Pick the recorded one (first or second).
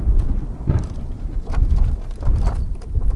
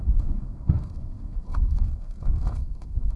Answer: first